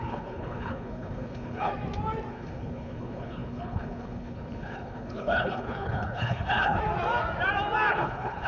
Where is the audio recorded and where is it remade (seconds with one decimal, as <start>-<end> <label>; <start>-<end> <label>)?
0.0-1.7 remade; 1.7-2.3 recorded; 2.3-6.8 remade; 6.8-7.9 recorded; 7.9-8.5 remade